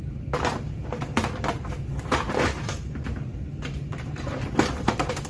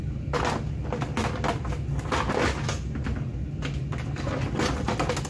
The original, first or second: second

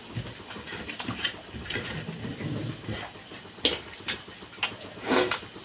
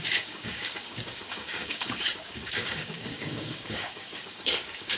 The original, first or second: first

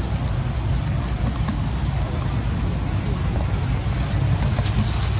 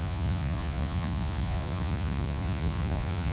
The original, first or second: first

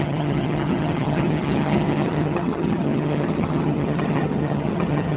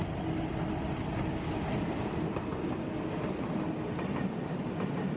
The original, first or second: second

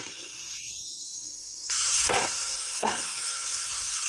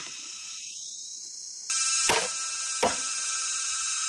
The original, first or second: second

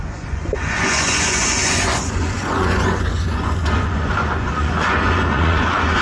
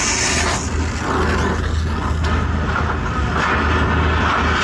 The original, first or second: second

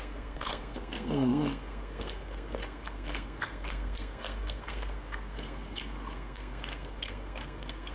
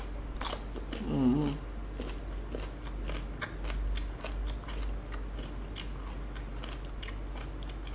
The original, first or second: second